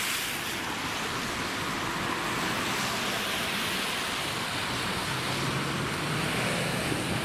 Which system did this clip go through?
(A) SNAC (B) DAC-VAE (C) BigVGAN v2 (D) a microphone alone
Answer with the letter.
D